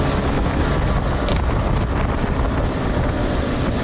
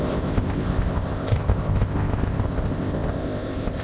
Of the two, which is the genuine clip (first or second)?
first